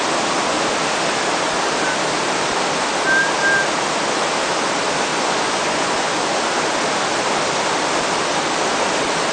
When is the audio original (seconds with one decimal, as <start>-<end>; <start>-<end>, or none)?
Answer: 0.0-5.1; 6.4-9.3